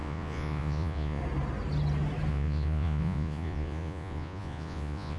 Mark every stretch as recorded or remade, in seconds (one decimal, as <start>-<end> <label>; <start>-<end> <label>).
0.0-1.2 remade; 1.2-2.3 recorded; 2.3-5.2 remade